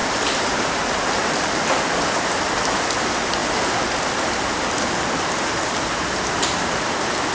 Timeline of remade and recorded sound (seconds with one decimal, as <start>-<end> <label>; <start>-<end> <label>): 0.0-1.8 remade; 1.8-7.3 recorded